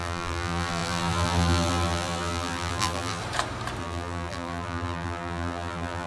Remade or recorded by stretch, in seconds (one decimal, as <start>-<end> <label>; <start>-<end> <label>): 0.0-3.2 remade; 3.2-3.8 recorded; 3.8-6.1 remade